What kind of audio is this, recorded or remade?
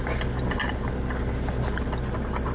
recorded